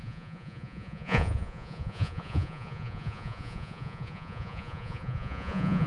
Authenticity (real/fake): fake